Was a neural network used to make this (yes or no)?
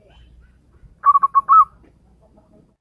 no